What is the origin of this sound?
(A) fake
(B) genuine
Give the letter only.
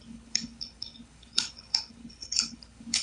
A